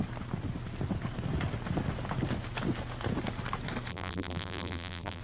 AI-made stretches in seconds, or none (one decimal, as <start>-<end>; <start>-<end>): 3.9-5.2